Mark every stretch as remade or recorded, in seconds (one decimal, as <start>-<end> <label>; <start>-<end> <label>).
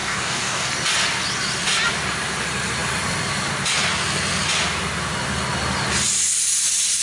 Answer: 0.0-0.7 remade; 0.7-7.0 recorded